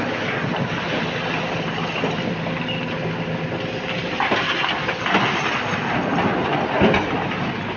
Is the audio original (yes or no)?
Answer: yes